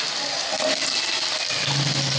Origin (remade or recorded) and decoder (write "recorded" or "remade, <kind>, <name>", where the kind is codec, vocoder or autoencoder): recorded